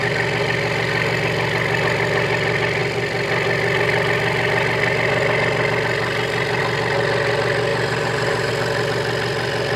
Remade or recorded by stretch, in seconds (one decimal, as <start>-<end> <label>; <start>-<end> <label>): 0.0-7.7 recorded; 7.7-8.5 remade; 8.5-9.8 recorded